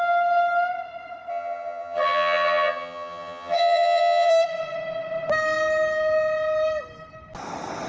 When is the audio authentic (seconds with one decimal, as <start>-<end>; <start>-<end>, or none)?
0.0-1.3; 4.3-7.9